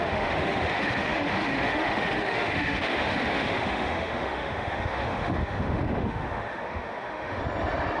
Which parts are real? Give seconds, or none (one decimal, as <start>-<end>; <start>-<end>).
7.4-8.0

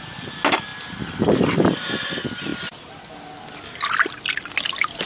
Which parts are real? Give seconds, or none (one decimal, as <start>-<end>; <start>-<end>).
0.0-5.1

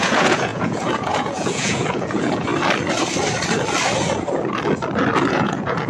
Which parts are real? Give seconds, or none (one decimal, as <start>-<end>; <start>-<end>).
2.5-5.3